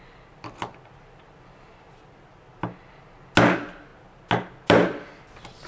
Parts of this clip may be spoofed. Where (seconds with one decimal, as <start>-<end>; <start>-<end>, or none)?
none